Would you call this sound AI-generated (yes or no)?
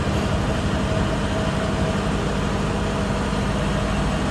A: no